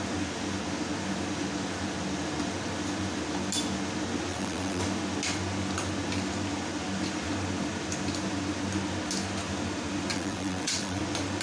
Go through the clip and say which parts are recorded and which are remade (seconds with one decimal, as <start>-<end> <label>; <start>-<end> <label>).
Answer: 0.0-4.3 recorded; 4.3-4.8 remade; 4.8-10.1 recorded; 10.1-11.0 remade; 11.0-11.4 recorded